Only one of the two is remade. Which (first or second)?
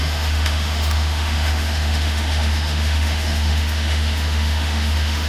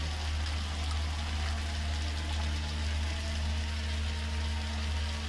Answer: first